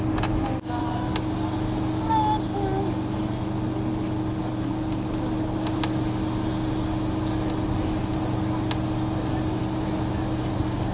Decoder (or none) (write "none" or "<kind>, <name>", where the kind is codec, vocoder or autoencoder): none